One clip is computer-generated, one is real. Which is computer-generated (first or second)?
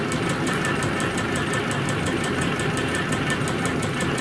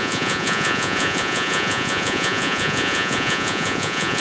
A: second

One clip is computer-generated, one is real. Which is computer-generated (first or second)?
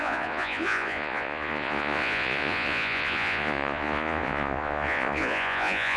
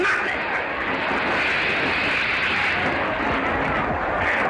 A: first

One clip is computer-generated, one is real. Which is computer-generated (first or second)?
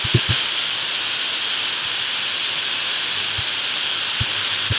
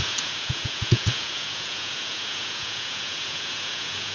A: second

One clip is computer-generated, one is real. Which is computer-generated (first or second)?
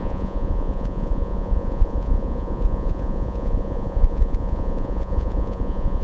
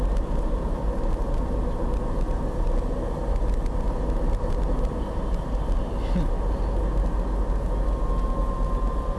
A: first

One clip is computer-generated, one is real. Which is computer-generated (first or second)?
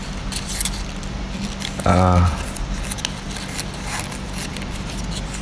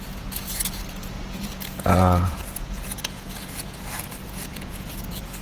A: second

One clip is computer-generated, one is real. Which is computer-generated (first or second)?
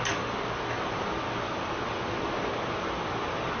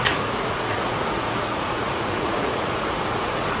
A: second